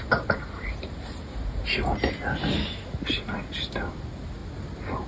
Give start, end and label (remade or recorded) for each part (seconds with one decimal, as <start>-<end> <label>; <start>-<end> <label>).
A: 0.0-5.1 recorded